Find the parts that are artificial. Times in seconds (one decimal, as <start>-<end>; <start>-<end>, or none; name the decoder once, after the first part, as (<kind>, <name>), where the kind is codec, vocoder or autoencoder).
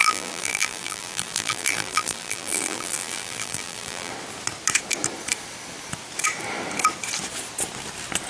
0.0-4.1 (vocoder, BigVGAN v2)